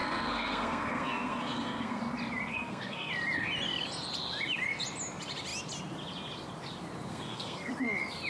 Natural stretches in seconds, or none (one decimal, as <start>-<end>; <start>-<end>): 2.0-2.5; 3.1-7.1; 7.7-8.3